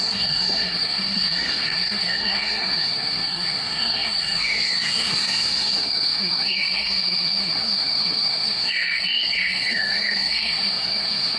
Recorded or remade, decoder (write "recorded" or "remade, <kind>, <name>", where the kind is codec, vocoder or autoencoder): remade, codec, SNAC